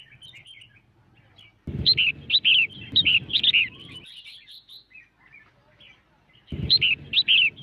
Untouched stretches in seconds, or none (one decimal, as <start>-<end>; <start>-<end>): 0.0-7.6